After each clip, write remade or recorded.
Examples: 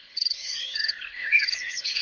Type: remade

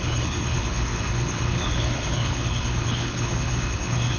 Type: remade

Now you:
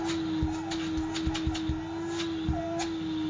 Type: recorded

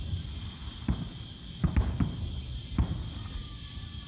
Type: recorded